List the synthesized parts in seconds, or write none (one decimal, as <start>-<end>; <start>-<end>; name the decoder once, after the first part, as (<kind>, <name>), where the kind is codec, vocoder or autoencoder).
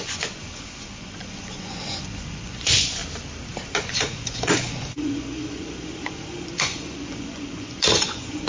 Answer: 0.0-3.0 (vocoder, Vocos); 3.8-8.5